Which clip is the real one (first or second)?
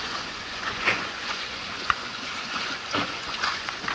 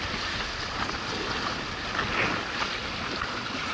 second